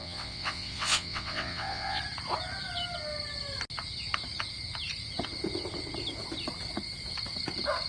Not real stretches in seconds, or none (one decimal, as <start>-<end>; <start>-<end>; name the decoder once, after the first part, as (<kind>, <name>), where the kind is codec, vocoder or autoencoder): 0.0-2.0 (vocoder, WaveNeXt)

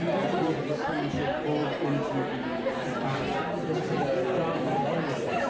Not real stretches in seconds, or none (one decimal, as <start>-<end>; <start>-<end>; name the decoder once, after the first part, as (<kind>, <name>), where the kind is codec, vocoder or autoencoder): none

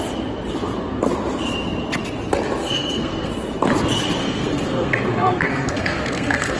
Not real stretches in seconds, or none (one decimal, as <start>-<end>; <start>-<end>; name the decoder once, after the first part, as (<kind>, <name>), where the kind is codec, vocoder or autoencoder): 2.6-3.3 (codec, SNAC); 4.2-6.6

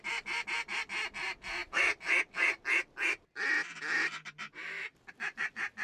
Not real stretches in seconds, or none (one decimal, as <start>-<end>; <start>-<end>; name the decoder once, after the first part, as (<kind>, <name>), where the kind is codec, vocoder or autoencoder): none